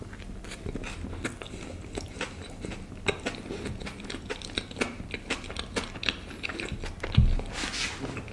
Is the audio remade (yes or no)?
no